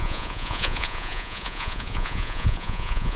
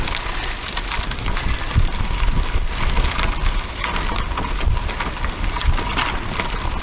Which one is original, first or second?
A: second